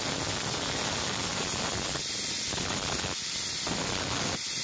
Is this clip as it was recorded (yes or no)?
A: yes